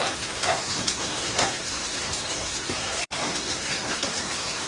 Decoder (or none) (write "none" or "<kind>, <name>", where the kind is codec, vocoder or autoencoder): codec, SNAC